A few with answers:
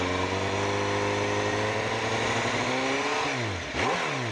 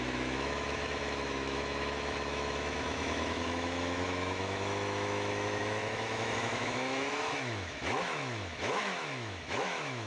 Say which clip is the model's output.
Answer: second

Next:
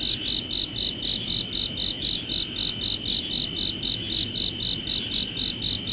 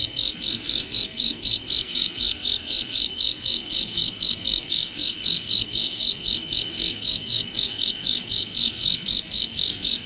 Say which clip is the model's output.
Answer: second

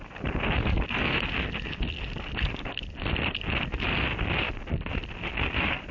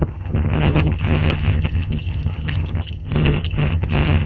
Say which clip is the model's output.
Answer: second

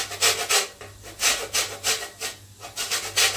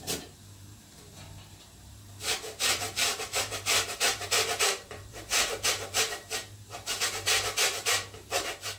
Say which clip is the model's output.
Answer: second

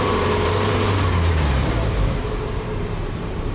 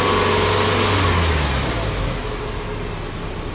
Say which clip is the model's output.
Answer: first